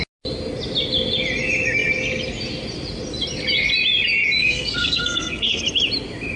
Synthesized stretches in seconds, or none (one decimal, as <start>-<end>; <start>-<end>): 4.4-5.6